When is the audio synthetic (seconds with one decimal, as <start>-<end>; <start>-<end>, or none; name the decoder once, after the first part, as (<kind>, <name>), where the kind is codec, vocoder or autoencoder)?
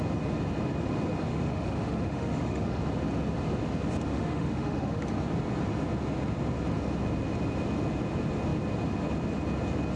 1.3-2.8 (autoencoder, DAC-VAE); 4.1-5.0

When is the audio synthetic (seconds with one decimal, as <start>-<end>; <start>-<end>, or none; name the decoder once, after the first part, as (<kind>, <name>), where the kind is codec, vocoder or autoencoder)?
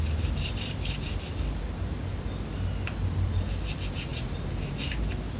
0.0-5.4 (vocoder, BigVGAN v2)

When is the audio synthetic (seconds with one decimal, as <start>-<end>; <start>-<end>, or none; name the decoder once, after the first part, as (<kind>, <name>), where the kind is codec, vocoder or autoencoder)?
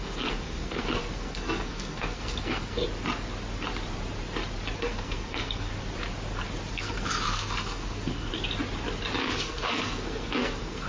0.0-2.8 (codec, SNAC); 4.8-5.7; 6.7-8.3; 9.2-10.9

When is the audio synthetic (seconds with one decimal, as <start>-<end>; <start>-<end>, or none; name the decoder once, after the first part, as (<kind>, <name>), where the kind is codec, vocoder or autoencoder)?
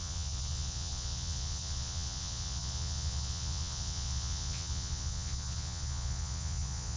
0.0-7.0 (vocoder, Vocos)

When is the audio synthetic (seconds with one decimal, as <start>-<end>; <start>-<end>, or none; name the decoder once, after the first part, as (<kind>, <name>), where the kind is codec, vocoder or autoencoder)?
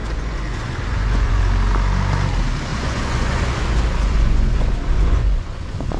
0.0-1.4 (vocoder, Vocos); 2.7-6.0